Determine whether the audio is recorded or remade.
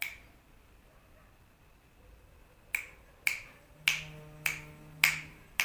recorded